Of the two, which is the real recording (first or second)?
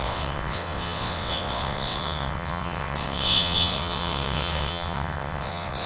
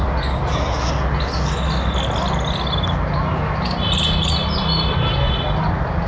second